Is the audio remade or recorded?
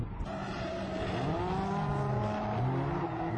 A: recorded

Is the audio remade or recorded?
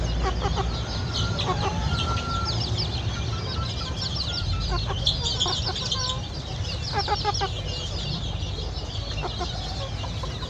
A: recorded